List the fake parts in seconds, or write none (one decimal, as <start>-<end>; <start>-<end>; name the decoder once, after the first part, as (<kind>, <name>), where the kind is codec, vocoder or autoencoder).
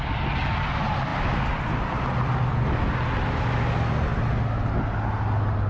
none